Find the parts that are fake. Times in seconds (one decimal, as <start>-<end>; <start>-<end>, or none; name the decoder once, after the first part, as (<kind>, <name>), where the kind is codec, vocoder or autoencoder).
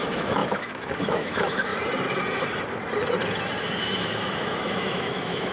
0.0-1.7 (autoencoder, DAC-VAE); 3.8-5.5